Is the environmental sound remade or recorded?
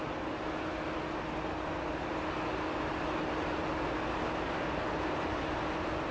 recorded